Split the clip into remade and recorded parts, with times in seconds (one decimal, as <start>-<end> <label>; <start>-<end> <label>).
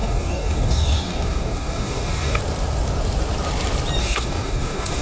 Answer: 0.0-2.4 remade; 2.4-4.0 recorded; 4.0-5.0 remade